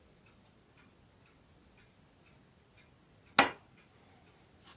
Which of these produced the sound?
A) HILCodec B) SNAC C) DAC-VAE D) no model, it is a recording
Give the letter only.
D